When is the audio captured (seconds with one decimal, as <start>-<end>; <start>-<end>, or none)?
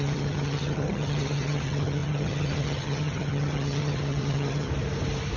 4.7-5.4